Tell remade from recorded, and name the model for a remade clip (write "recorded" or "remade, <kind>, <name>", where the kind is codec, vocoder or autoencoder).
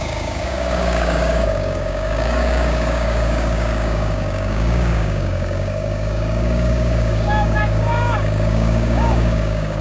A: remade, codec, DAC